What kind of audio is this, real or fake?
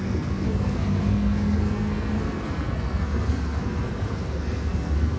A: fake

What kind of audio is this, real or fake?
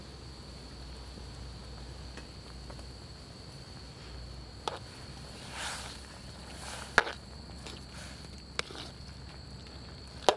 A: real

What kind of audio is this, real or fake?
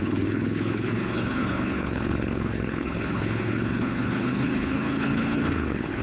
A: fake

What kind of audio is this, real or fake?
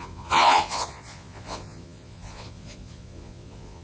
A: fake